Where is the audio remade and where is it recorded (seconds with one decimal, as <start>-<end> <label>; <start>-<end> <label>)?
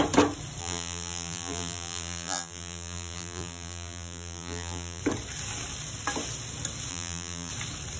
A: 0.0-0.6 recorded; 0.6-5.0 remade; 5.0-6.9 recorded; 6.9-7.5 remade; 7.5-8.0 recorded